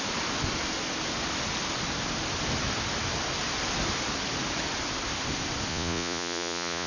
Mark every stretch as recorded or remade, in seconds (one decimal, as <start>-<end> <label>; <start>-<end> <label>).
0.0-5.7 recorded; 5.7-6.9 remade